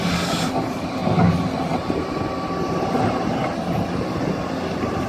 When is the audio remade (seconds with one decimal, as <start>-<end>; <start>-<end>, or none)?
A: 0.0-1.0; 4.1-5.1